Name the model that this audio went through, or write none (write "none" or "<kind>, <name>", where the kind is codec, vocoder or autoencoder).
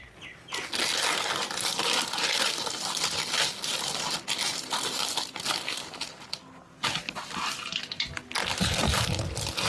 none